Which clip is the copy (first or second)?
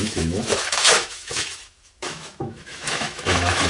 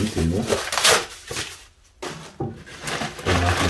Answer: first